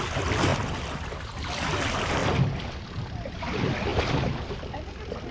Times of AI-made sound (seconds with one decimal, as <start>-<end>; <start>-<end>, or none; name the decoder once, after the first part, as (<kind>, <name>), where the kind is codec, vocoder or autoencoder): 0.5-1.2 (vocoder, BigVGAN v2); 2.2-3.4